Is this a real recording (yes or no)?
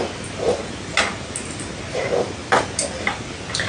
yes